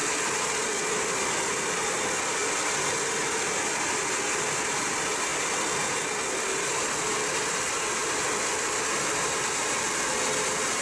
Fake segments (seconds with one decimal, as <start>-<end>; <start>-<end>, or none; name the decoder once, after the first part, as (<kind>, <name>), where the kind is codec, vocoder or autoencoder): 0.0-1.3 (vocoder, BigVGAN v2); 8.0-10.0